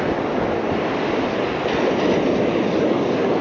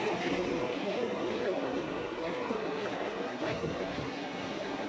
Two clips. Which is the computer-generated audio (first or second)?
second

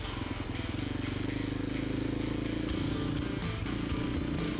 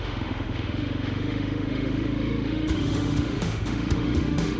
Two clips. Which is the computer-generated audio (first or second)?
second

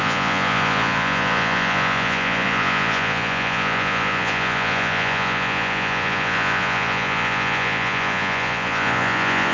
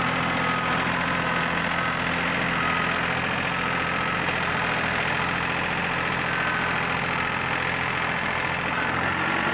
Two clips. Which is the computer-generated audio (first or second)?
first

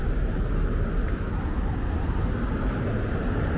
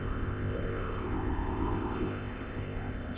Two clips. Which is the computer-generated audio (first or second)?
second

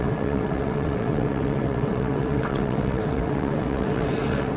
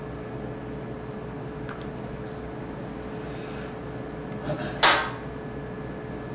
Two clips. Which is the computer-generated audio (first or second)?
first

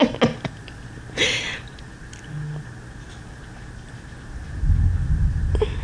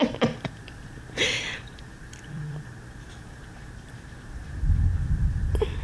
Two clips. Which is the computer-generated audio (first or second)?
second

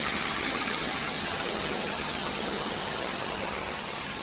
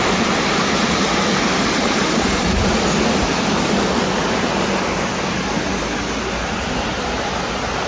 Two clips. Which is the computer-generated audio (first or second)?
first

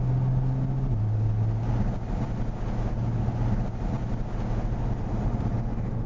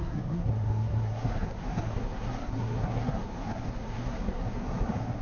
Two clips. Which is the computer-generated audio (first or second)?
second